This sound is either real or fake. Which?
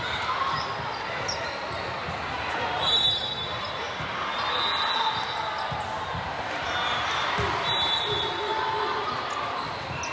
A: real